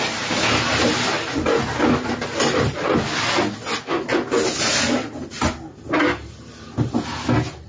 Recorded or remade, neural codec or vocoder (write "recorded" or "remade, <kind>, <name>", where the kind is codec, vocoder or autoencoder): recorded